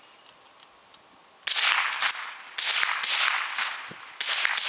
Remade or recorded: recorded